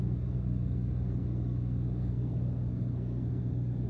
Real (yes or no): no